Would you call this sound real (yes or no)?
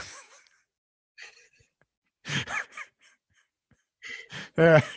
no